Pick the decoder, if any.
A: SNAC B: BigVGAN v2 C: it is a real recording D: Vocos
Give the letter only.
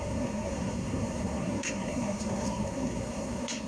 A